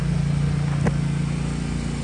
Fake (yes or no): no